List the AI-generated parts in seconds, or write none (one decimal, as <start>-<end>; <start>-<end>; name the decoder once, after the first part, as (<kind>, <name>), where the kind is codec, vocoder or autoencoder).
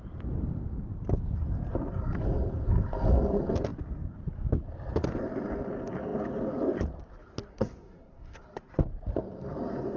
7.5-8.4 (codec, SNAC)